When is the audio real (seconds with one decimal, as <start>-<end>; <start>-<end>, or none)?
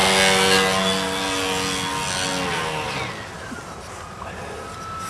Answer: 0.0-5.1